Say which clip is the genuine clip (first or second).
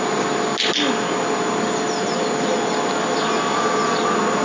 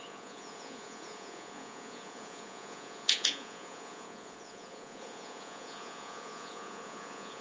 first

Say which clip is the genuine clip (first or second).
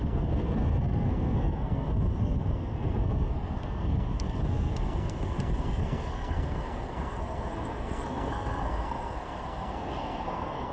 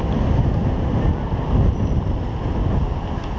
second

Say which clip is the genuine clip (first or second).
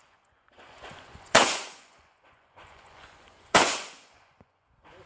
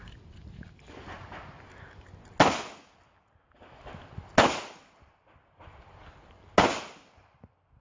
second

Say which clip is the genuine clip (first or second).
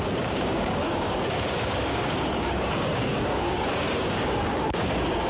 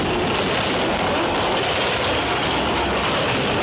second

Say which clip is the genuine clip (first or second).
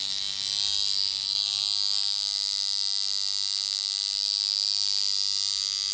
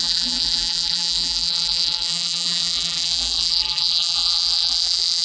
first